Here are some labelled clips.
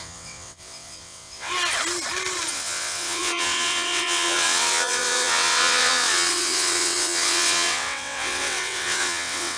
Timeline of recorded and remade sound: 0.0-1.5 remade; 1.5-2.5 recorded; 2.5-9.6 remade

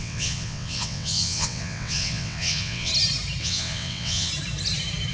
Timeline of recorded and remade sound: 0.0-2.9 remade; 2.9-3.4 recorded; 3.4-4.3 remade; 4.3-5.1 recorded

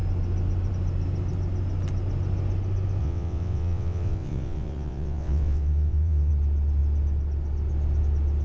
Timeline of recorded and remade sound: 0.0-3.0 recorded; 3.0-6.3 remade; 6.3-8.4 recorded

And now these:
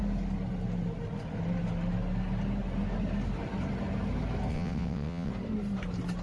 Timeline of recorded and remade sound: 0.0-4.5 recorded; 4.5-5.3 remade; 5.3-6.2 recorded

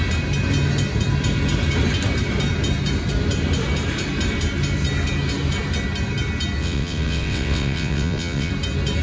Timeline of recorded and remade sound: 0.0-6.6 recorded; 6.6-8.5 remade; 8.5-9.0 recorded

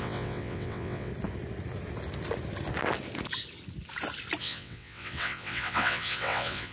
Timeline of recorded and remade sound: 0.0-1.1 remade; 1.1-4.4 recorded; 4.4-6.7 remade

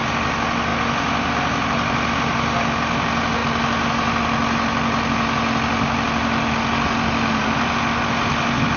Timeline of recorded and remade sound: 0.0-8.8 recorded